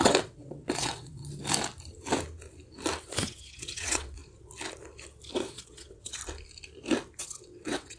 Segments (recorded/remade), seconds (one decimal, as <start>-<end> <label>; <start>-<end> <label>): 0.0-1.2 remade; 1.2-3.0 recorded; 3.0-4.2 remade; 4.2-5.3 recorded; 5.3-6.2 remade; 6.2-7.2 recorded; 7.2-8.0 remade